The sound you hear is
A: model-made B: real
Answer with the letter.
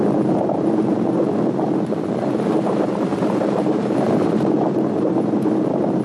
A